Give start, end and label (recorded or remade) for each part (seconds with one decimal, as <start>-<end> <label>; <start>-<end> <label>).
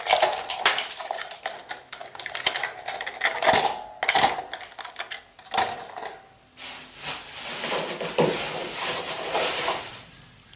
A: 0.0-8.6 recorded; 8.6-9.9 remade; 9.9-10.6 recorded